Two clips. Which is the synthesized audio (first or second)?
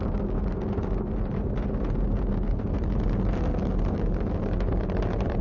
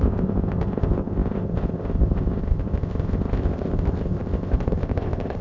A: second